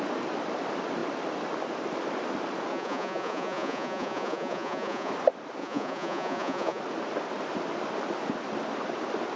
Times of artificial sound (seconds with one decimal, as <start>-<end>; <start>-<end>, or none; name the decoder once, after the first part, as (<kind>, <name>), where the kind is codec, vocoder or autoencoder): 2.7-5.1 (vocoder, Vocos); 5.6-6.8